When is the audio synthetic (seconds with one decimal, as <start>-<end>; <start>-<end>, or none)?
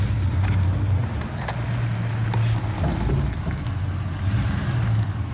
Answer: none